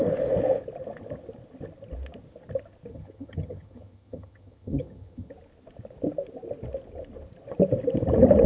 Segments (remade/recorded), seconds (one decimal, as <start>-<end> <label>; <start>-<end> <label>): 0.0-2.9 recorded; 2.9-5.3 remade; 5.3-8.5 recorded